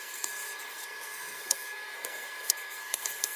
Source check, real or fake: fake